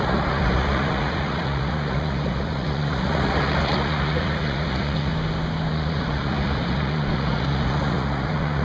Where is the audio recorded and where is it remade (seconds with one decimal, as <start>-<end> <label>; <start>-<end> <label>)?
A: 0.0-5.1 remade; 5.1-5.7 recorded; 5.7-8.6 remade